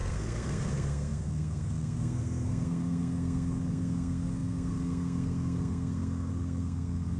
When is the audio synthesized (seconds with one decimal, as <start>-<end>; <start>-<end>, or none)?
0.0-7.2